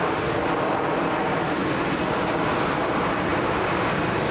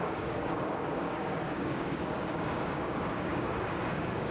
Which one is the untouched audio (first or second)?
first